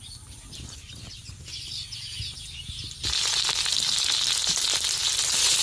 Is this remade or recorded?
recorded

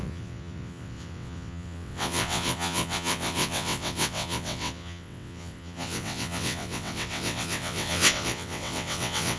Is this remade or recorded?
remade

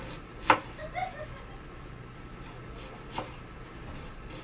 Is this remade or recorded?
recorded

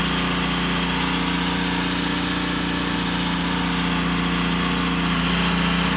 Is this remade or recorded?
recorded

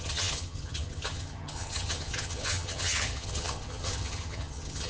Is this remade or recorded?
remade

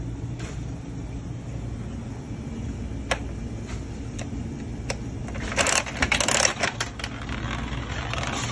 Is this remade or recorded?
recorded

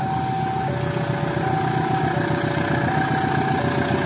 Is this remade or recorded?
recorded